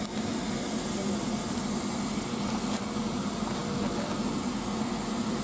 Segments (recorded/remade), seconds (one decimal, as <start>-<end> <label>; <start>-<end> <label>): 0.0-5.4 recorded